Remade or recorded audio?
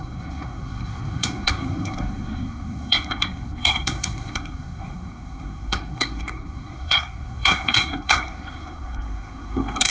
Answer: remade